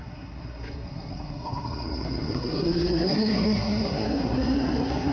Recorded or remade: remade